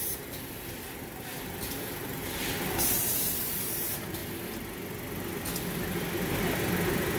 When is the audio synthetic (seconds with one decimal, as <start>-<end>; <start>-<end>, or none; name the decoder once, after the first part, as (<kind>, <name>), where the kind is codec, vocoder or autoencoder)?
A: 0.0-4.2 (vocoder, BigVGAN v2)